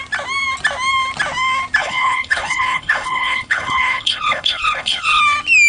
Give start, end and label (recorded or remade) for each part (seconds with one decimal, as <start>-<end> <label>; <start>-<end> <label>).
0.0-1.8 recorded; 1.8-5.2 remade; 5.2-5.7 recorded